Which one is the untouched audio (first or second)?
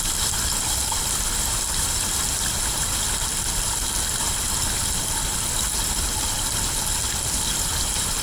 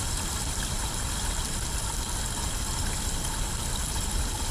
first